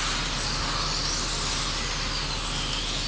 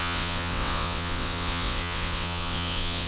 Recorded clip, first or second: first